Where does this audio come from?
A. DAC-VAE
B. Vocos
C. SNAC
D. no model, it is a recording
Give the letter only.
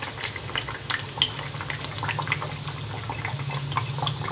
D